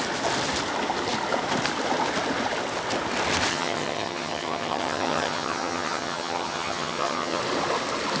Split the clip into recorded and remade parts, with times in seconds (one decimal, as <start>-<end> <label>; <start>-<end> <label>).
0.0-3.5 recorded; 3.5-7.4 remade; 7.4-8.2 recorded